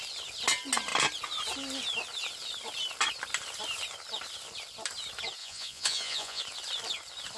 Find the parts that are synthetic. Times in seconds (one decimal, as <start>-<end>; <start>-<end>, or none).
5.4-6.4